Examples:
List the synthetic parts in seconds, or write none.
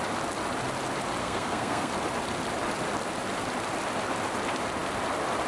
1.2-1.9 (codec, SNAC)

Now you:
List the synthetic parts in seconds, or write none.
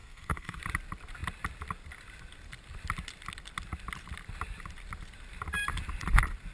0.0-0.6 (codec, SNAC)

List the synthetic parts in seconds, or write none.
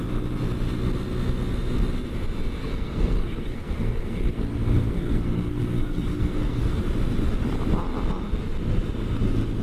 2.6-6.8 (codec, SNAC)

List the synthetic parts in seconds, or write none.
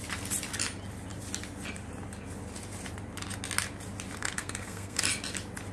4.2-5.0 (codec, SNAC)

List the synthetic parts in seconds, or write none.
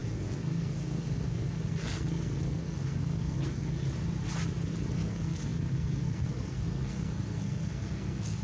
0.0-3.8 (codec, SNAC); 4.9-8.4